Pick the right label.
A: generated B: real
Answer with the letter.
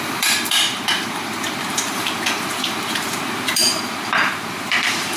A